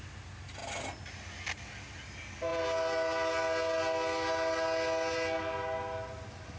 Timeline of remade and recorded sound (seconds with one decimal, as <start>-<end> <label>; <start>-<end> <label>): 0.0-6.6 recorded